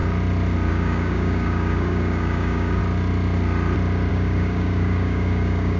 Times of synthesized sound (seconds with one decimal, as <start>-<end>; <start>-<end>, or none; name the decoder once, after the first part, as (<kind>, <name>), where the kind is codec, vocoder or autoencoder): 0.7-2.8 (codec, DAC); 4.1-5.8